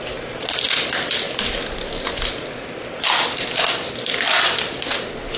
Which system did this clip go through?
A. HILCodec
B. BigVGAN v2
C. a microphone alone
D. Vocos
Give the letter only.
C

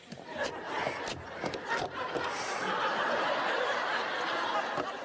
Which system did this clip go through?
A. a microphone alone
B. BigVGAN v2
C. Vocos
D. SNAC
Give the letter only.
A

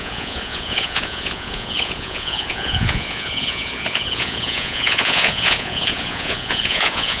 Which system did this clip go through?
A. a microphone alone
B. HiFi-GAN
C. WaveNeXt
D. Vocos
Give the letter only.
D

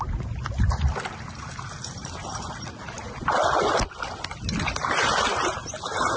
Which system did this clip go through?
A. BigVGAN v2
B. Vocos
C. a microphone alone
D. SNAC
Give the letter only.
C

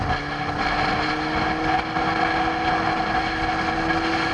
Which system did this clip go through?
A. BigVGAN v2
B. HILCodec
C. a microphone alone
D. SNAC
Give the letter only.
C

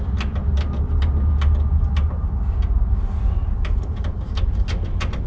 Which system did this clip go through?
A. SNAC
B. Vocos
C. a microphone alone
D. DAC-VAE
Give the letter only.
C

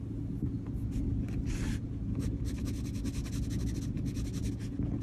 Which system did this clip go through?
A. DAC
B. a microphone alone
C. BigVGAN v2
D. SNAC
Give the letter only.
B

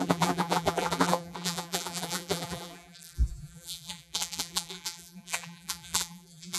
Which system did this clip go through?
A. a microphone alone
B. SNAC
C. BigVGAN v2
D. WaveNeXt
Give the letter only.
C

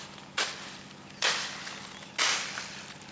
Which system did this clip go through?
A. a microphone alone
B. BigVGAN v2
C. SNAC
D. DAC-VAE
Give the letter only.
A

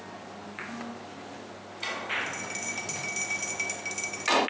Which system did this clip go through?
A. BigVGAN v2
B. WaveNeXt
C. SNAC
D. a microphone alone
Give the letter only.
D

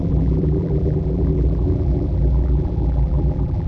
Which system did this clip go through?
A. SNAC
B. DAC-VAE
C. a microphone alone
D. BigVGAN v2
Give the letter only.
D